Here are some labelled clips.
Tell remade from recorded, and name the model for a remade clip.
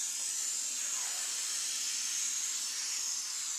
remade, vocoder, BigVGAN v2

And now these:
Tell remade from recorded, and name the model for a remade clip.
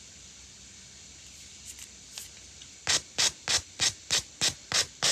recorded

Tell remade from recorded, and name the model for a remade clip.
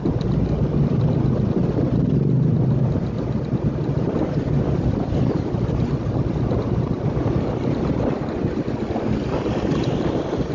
recorded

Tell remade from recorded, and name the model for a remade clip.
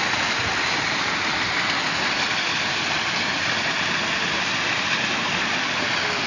recorded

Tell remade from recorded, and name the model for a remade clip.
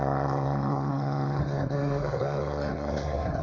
remade, codec, SNAC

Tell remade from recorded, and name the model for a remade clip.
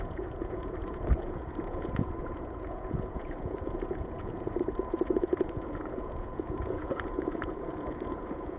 remade, vocoder, Vocos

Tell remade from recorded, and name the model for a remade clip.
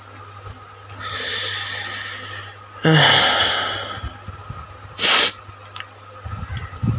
recorded